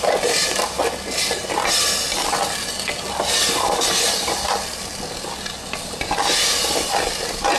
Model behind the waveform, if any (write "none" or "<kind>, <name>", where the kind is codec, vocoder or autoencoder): none